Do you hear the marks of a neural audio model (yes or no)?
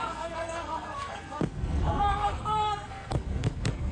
yes